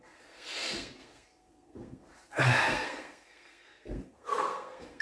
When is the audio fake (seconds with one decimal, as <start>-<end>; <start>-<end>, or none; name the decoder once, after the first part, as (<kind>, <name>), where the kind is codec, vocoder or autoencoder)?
0.0-5.0 (codec, SNAC)